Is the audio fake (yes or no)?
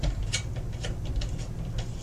yes